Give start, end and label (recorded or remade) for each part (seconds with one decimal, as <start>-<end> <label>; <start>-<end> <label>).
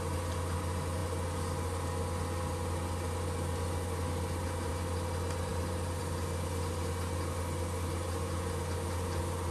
0.0-9.5 recorded